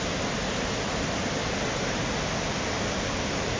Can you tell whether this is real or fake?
real